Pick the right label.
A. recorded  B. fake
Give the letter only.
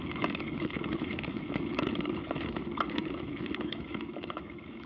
B